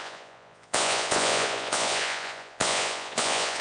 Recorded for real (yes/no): no